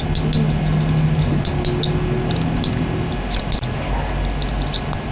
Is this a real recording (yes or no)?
yes